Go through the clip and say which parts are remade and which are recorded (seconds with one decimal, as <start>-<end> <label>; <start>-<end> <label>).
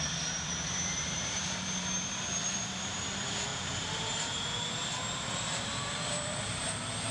0.0-7.1 remade